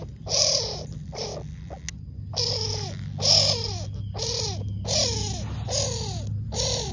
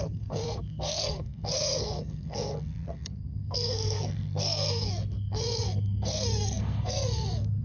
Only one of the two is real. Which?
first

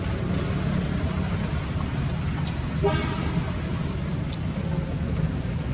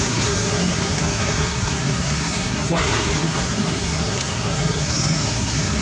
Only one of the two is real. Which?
first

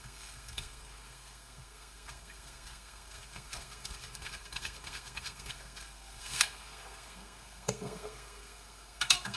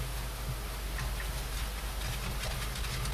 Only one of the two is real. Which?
second